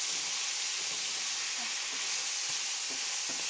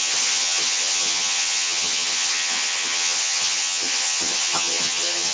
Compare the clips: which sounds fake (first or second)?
second